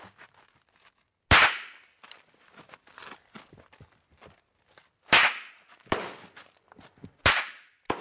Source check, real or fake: real